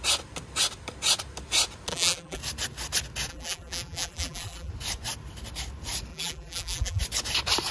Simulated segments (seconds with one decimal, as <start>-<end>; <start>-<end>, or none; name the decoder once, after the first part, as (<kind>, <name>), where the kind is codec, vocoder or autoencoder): 1.9-2.4 (vocoder, BigVGAN v2); 3.3-4.7; 6.1-7.0